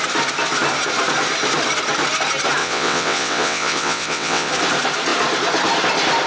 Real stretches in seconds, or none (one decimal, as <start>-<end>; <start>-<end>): 0.0-2.6; 4.5-6.3